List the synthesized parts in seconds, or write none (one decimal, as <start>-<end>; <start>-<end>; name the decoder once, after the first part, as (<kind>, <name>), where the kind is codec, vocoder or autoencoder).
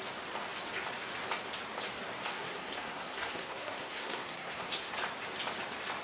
2.3-4.9 (codec, SNAC)